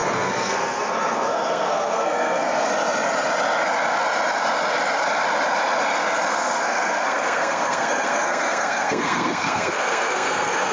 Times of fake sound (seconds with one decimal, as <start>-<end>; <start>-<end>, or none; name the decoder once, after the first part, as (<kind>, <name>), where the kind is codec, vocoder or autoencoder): 0.0-2.7 (codec, SNAC); 6.3-10.7